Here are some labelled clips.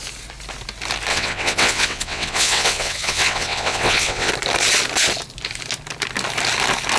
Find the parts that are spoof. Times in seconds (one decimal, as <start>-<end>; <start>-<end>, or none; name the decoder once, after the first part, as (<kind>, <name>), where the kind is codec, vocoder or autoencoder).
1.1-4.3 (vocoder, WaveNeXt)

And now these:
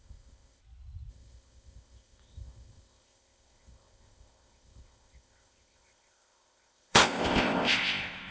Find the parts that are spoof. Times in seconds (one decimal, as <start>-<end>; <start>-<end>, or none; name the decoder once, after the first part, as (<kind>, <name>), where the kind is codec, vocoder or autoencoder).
0.0-0.6 (codec, ZipCodec); 1.1-8.3

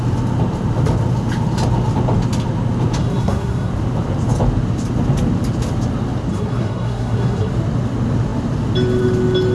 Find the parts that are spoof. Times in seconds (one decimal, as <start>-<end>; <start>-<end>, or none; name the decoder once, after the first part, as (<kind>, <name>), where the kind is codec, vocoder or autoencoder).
3.0-3.7 (codec, SNAC); 6.3-7.5

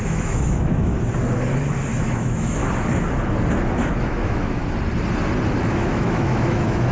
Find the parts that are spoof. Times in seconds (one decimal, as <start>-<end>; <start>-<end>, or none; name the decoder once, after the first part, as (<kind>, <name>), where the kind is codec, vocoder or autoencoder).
0.0-0.9 (autoencoder, DAC-VAE); 2.0-2.6; 4.0-4.6; 5.6-6.9

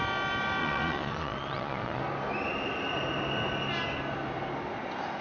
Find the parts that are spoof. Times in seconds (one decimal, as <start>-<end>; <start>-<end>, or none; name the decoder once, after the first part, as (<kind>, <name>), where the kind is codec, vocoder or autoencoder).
0.6-2.0 (vocoder, Vocos)

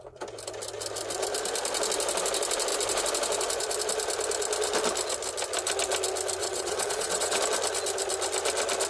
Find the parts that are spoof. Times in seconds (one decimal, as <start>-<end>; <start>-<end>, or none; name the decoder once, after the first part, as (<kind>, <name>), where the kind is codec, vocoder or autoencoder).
6.4-7.4 (vocoder, WaveNeXt)